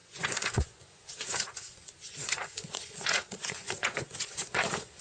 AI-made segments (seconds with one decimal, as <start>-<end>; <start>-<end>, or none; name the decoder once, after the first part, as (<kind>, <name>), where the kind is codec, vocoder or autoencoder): 0.0-5.0 (vocoder, Vocos)